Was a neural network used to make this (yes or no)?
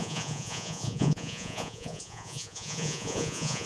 yes